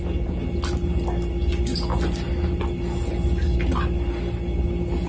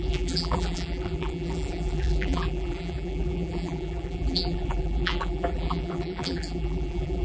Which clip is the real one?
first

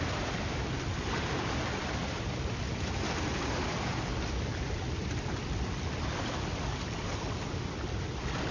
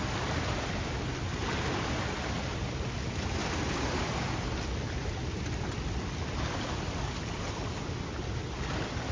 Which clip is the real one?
second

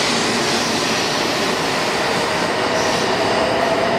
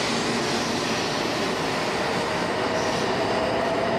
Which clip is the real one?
second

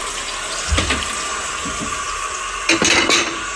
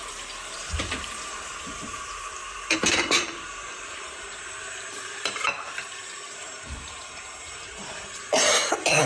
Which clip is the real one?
first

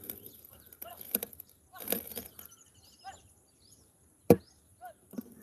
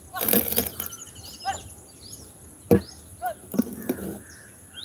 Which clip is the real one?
second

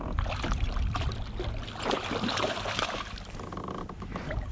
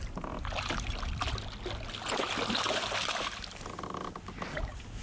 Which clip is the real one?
second